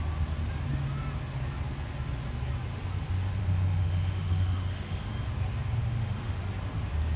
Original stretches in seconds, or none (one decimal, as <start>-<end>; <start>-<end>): 0.0-3.4; 5.1-5.8; 6.4-7.2